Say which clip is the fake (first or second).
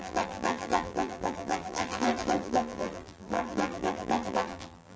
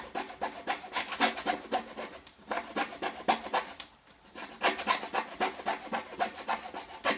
first